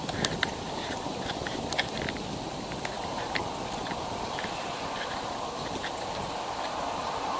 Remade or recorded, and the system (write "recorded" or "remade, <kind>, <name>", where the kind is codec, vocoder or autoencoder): recorded